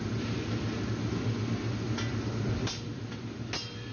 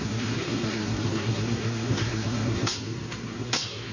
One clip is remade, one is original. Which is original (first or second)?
first